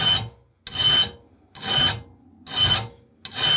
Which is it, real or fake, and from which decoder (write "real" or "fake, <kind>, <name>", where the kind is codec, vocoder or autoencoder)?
real